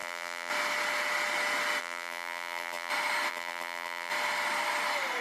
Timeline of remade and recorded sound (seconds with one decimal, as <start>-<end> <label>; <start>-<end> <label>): 0.0-0.5 remade; 0.5-1.8 recorded; 1.8-2.9 remade; 2.9-3.3 recorded; 3.3-4.1 remade; 4.1-5.2 recorded